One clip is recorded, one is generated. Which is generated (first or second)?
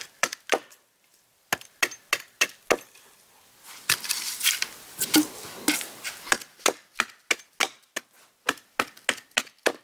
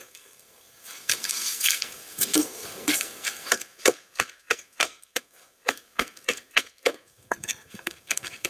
second